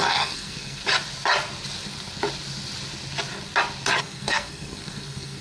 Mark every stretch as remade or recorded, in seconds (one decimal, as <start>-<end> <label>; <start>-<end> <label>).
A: 0.0-0.8 remade; 0.8-4.0 recorded; 4.0-5.4 remade